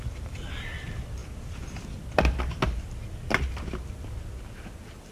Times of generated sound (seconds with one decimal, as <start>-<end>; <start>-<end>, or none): none